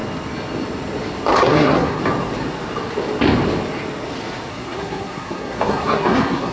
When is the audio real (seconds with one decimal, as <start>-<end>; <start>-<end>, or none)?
0.0-1.4; 2.0-4.5